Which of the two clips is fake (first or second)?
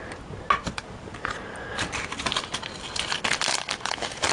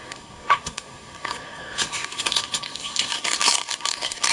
second